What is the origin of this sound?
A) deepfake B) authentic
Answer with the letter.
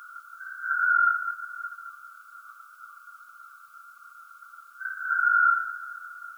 B